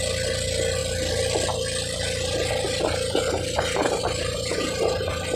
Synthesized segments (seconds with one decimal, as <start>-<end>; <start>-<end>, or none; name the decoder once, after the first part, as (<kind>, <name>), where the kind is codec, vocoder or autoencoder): none